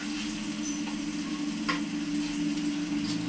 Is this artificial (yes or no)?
no